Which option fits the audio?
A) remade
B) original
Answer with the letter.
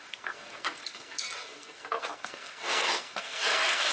A